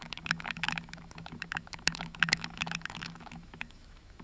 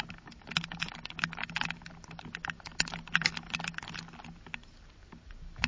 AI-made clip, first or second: first